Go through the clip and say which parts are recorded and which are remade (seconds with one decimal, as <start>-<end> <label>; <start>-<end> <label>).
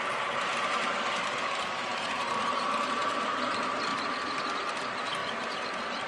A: 0.0-3.9 remade; 3.9-4.7 recorded; 4.7-5.2 remade; 5.2-6.1 recorded